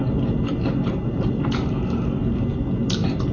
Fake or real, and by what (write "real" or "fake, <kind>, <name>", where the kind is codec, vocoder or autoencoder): fake, vocoder, BigVGAN v2